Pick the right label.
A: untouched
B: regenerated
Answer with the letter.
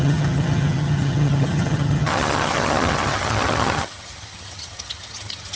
B